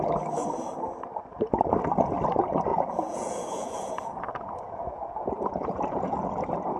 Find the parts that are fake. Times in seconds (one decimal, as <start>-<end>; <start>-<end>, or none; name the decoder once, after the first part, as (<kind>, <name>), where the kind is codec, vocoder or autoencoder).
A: 2.7-6.8 (vocoder, Vocos)